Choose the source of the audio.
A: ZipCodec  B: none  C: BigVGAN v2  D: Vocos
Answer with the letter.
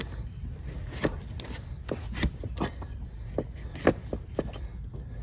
B